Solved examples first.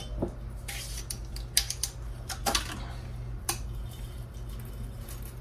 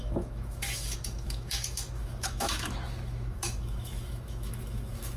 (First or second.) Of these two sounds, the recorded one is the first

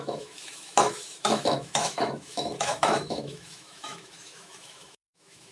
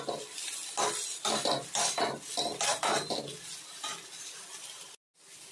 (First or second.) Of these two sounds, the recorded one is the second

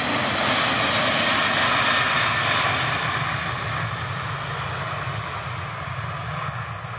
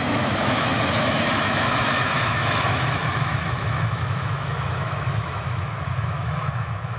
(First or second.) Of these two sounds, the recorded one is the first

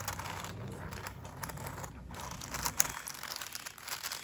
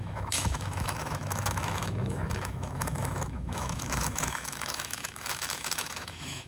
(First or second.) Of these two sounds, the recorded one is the first